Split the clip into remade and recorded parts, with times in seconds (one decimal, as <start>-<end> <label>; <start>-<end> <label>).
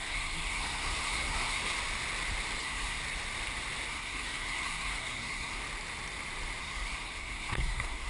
0.0-1.6 remade; 1.6-2.6 recorded; 2.6-3.0 remade; 3.0-3.9 recorded; 3.9-5.6 remade; 5.6-6.6 recorded; 6.6-8.1 remade